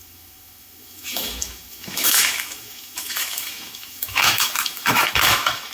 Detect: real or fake fake